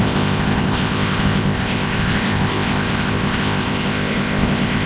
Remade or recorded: remade